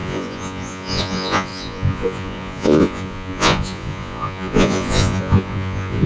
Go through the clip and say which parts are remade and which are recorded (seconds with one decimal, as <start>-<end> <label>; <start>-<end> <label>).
0.0-6.1 remade